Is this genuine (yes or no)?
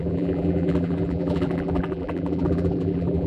no